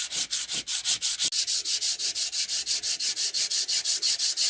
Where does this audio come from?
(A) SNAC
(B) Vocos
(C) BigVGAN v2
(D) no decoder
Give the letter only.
D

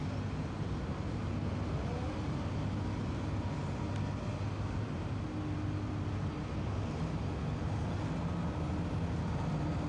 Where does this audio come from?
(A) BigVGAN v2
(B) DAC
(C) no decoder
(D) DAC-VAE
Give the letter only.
C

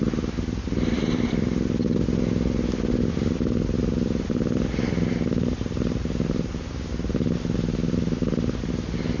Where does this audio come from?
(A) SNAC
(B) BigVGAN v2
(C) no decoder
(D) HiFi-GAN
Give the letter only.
C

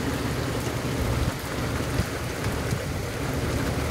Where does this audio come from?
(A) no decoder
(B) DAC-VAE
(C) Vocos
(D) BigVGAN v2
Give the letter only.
A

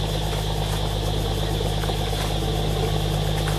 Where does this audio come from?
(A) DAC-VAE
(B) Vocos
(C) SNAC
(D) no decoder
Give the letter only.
D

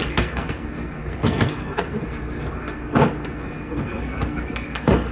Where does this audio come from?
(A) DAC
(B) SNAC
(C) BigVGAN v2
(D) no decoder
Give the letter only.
B